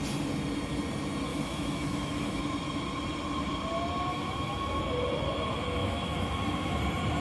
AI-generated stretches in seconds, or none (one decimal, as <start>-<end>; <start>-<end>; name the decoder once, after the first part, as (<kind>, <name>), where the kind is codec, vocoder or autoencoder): 1.3-2.4 (autoencoder, DAC-VAE); 4.1-4.8; 5.8-6.8